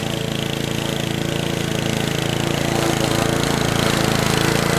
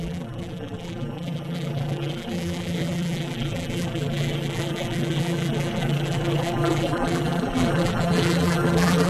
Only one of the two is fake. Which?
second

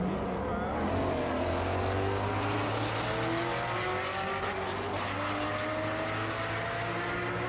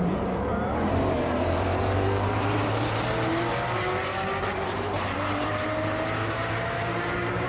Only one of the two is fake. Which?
second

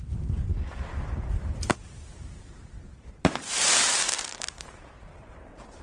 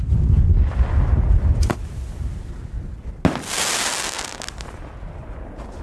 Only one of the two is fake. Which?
first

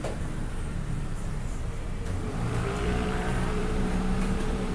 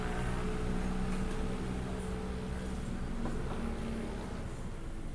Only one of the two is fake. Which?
first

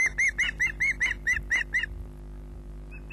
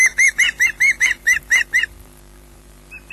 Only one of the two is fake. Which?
second